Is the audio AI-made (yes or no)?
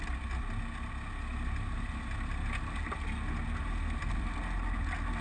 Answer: no